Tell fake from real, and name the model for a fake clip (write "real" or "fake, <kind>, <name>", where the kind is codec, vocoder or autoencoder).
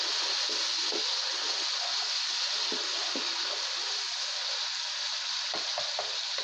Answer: real